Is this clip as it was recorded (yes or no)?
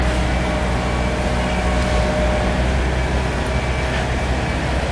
yes